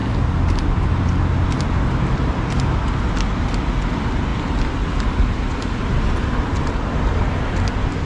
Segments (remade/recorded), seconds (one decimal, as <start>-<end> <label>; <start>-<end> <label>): 0.0-6.5 recorded; 6.5-7.2 remade; 7.2-8.1 recorded